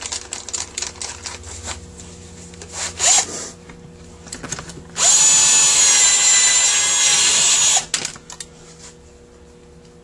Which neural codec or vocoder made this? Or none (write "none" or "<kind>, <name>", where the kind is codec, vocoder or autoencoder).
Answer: none